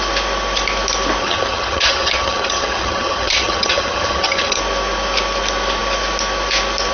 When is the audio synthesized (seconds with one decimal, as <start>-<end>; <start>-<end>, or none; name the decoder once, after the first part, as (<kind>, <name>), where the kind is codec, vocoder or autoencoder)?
1.2-4.6 (vocoder, HiFi-GAN)

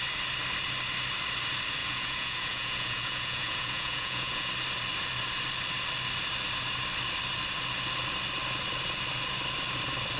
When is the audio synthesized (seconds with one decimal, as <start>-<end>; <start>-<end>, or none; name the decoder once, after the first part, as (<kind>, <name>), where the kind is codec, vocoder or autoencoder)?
1.8-4.5 (vocoder, Vocos)